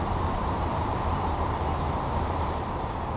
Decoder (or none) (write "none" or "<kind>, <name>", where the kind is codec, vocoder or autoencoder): vocoder, BigVGAN v2